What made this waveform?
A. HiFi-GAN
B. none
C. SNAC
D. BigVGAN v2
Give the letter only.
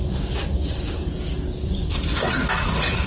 B